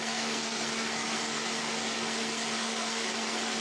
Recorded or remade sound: remade